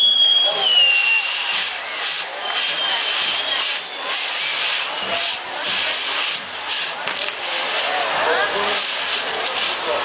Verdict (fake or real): fake